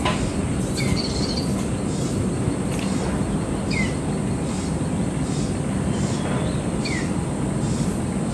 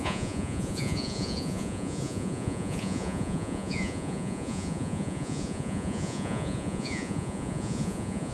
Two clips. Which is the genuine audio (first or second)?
first